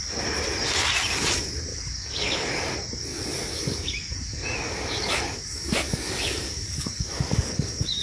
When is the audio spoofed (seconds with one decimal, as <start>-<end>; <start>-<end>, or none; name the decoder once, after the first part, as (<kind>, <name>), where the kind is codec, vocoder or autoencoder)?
1.7-2.7 (codec, DAC); 3.1-8.0